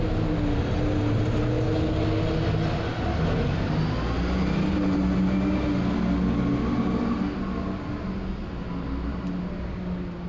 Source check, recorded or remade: recorded